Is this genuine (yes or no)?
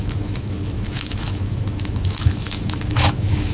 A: no